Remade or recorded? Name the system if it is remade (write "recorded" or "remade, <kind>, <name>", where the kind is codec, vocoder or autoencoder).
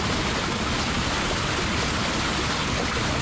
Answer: recorded